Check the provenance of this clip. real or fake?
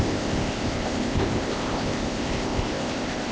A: fake